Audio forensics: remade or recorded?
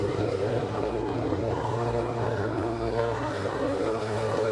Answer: remade